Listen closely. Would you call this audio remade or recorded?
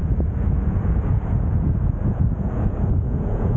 remade